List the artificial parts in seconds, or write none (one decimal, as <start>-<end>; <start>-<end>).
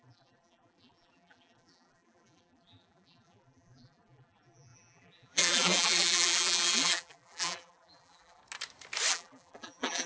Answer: 0.0-8.4; 9.1-10.1